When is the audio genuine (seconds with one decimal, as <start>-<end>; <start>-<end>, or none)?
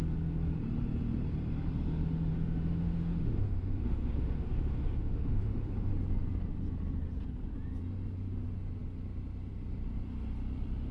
0.0-2.3; 5.9-10.9